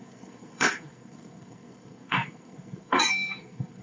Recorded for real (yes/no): no